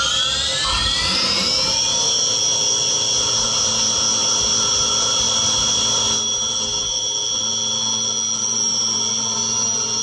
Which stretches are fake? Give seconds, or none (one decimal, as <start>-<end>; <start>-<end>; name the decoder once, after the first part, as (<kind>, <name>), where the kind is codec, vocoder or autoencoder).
none